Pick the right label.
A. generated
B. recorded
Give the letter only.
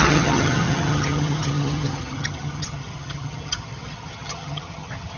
A